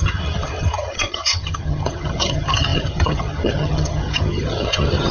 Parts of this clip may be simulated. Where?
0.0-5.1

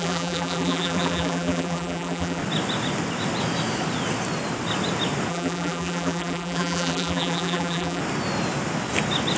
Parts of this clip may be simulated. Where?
0.0-2.4; 5.3-8.0

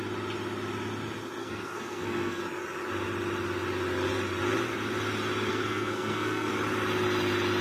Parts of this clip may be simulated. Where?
1.4-2.4; 5.5-6.5

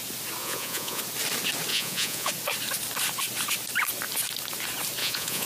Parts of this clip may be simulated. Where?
0.4-1.0; 1.7-2.3; 5.0-5.5

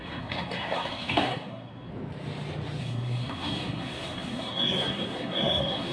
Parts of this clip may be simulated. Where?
0.0-1.9; 2.8-5.9

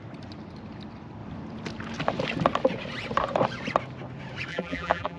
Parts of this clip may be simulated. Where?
4.5-5.2

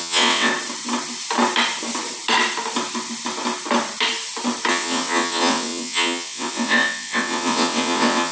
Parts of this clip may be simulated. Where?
0.0-0.5; 4.7-8.3

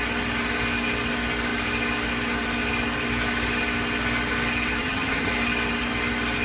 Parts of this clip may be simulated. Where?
4.8-5.3